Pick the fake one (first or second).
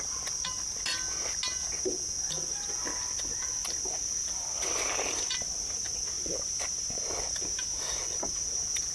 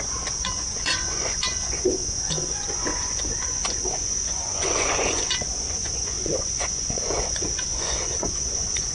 second